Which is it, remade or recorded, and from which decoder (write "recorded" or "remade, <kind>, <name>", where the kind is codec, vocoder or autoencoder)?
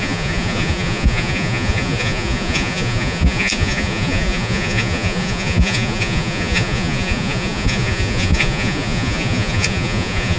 remade, vocoder, Vocos